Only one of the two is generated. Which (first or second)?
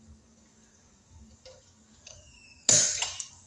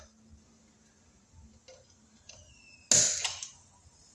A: first